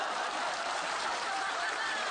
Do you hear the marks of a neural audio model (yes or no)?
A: yes